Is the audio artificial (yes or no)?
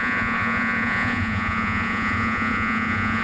yes